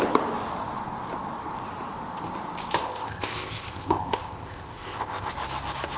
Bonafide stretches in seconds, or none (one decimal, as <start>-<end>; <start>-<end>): 0.0-2.8; 5.3-6.0